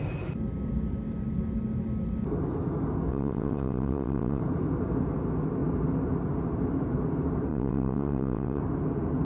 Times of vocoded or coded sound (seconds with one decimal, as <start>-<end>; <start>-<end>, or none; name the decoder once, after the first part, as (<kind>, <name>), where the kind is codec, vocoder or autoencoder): 3.1-4.4 (vocoder, WaveNeXt); 7.5-8.6